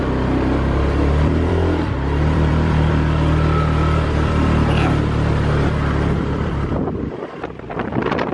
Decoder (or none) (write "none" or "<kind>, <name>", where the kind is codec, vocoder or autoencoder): vocoder, BigVGAN v2